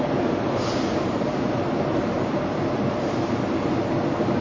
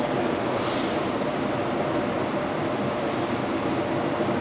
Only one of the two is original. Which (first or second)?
second